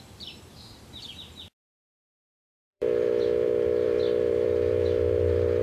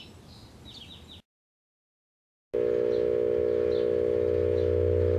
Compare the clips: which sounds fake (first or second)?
first